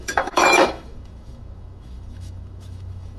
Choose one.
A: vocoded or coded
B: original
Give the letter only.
A